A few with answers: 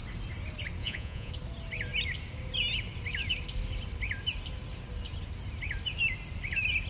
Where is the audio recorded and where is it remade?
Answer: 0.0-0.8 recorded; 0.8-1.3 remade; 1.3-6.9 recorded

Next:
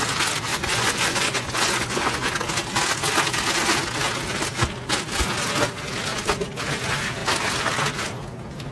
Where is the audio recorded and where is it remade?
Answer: 0.0-0.5 recorded; 0.5-2.3 remade; 2.3-8.7 recorded

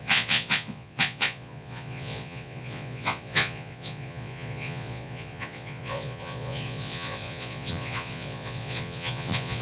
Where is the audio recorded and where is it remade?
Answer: 0.0-9.6 remade